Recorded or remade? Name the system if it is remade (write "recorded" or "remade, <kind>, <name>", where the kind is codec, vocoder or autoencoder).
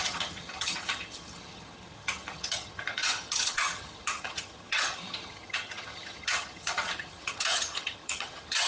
remade, vocoder, HiFi-GAN